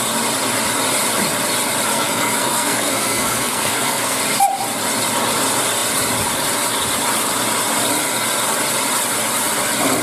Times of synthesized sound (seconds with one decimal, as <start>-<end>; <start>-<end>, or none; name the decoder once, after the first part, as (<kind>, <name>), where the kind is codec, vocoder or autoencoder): 1.9-4.2 (codec, SNAC)